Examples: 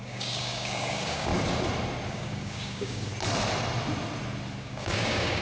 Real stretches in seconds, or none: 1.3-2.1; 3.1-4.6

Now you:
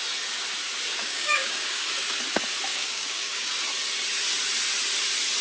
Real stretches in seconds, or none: 0.0-1.0; 1.9-2.7; 3.5-5.4

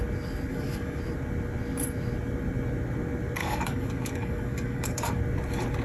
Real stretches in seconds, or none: 0.0-0.5; 1.0-3.4; 5.2-5.8

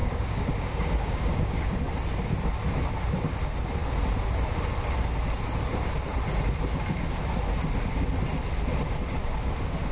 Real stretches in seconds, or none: 1.8-9.9